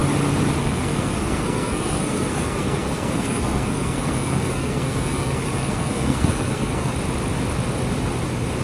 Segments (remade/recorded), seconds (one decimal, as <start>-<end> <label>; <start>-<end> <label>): 0.0-0.6 recorded; 0.6-6.9 remade; 6.9-8.6 recorded